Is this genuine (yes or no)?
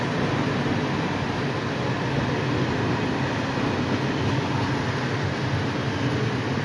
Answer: yes